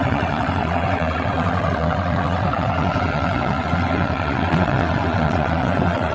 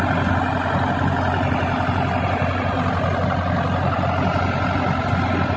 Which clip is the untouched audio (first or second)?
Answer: second